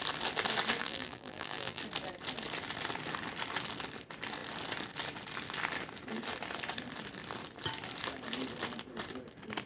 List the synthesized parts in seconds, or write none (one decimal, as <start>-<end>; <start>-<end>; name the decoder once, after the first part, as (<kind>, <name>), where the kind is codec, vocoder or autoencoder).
0.8-1.8 (vocoder, BigVGAN v2)